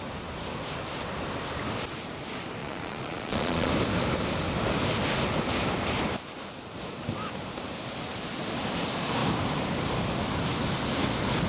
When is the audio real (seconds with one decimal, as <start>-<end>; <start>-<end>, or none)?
0.0-2.6; 3.7-11.5